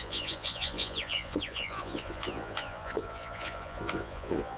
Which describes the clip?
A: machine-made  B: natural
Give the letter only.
A